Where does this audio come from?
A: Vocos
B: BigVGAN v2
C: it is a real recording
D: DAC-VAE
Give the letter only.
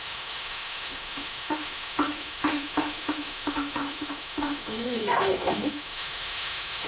D